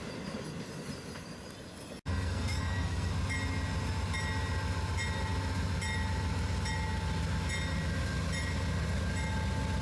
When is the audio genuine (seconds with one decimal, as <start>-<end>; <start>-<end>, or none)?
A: 0.0-2.1; 3.1-9.8